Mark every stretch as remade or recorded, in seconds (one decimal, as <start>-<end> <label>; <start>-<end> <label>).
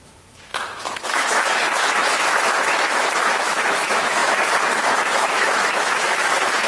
0.0-6.7 remade